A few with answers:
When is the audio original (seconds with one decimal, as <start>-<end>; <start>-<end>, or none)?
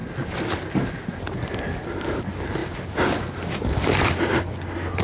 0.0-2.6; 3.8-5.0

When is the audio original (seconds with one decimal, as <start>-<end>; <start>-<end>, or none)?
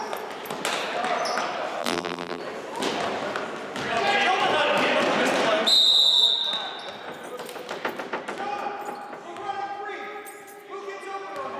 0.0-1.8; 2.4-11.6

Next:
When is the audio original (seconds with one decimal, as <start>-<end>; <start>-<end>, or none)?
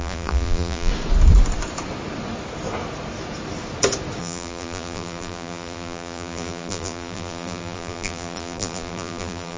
0.9-4.2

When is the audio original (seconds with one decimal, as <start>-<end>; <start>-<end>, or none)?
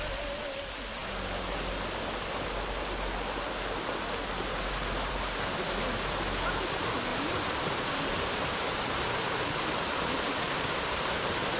0.0-7.1; 9.8-11.6